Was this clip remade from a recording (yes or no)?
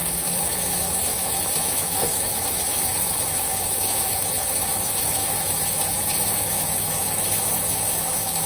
yes